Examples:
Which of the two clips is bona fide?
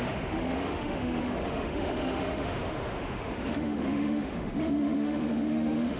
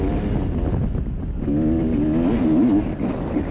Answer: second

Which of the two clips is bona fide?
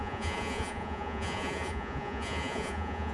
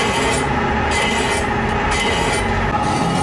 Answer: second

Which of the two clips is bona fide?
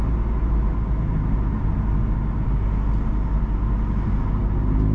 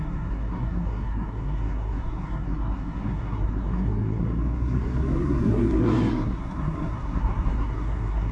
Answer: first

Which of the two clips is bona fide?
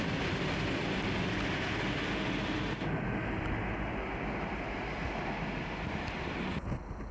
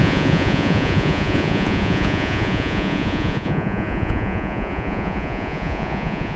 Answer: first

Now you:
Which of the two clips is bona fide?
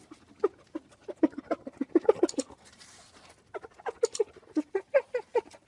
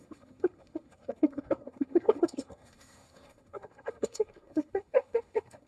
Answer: first